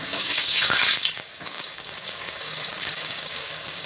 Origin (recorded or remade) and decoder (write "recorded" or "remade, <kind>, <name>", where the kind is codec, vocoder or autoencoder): remade, codec, DAC